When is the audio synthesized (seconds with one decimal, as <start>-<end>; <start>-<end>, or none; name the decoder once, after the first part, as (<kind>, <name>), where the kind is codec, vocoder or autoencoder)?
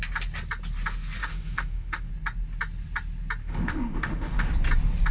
1.2-2.1 (autoencoder, DAC-VAE); 3.4-4.5